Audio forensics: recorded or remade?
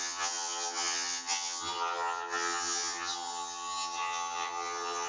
remade